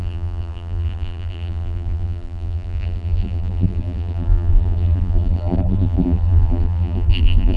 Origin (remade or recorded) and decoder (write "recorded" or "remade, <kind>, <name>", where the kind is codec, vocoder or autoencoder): remade, vocoder, BigVGAN v2